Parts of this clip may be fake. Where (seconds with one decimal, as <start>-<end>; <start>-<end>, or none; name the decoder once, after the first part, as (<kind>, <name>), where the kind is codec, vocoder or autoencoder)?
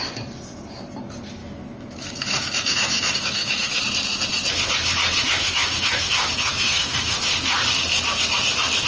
1.4-3.8 (autoencoder, DAC-VAE); 5.2-7.2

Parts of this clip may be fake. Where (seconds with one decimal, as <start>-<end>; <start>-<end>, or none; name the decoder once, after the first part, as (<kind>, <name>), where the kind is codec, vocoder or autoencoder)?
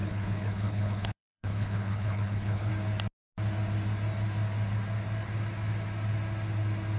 0.0-2.7 (codec, HILCodec)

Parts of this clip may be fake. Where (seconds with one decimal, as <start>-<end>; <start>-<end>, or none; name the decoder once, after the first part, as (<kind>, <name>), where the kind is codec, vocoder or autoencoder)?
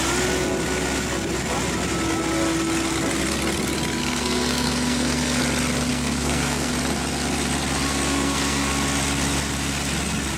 4.0-5.4 (codec, SNAC); 5.9-6.7; 7.9-8.7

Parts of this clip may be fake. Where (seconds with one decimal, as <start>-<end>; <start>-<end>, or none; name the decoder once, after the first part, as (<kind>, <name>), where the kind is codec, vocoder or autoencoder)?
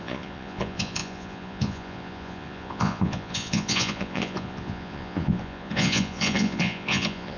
0.0-7.4 (vocoder, Vocos)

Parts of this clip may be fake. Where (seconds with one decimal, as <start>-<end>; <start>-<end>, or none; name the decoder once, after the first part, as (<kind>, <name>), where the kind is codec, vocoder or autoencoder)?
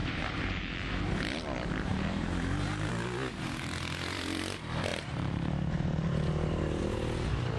0.0-1.0 (vocoder, BigVGAN v2); 1.9-2.9; 4.9-5.5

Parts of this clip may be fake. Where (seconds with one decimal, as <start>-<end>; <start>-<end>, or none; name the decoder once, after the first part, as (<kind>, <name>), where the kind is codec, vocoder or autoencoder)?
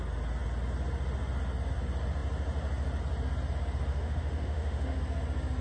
3.9-5.0 (autoencoder, DAC-VAE)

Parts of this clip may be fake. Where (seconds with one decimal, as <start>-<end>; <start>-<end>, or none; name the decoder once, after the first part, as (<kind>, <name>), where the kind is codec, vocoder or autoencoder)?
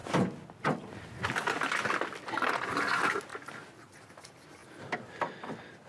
none